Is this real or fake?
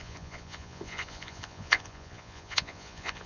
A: fake